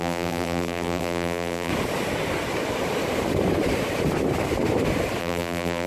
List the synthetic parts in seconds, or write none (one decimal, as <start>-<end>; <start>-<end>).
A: 0.0-1.7; 5.2-5.9